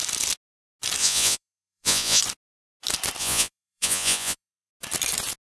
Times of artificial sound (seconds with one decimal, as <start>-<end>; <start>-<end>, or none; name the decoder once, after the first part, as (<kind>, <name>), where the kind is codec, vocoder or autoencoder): 1.0-2.2 (vocoder, Vocos); 3.2-4.7